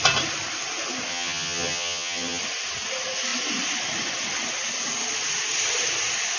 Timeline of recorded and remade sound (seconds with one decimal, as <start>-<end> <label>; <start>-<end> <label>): 0.0-1.1 recorded; 1.1-2.4 remade; 2.4-6.4 recorded

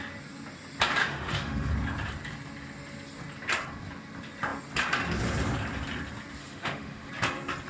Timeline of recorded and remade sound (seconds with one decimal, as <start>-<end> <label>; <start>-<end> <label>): 0.0-1.0 recorded; 1.0-1.7 remade; 1.7-6.4 recorded; 6.4-7.1 remade; 7.1-7.7 recorded

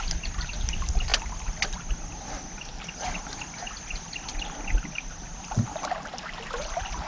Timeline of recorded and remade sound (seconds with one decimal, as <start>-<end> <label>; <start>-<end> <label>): 0.0-7.1 recorded

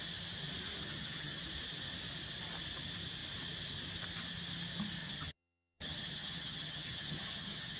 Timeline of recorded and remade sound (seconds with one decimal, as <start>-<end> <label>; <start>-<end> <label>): 0.0-0.8 recorded; 0.8-1.4 remade; 1.4-5.0 recorded; 5.0-7.8 remade

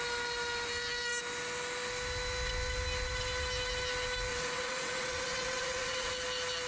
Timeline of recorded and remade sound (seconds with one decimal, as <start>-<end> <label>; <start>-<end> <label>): 0.0-4.3 recorded; 4.3-6.1 remade; 6.1-6.7 recorded

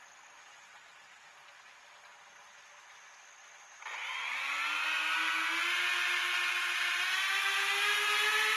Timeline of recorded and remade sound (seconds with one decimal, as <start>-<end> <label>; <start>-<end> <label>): 0.0-8.6 recorded